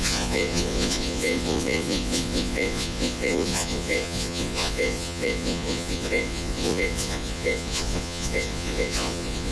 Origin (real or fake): fake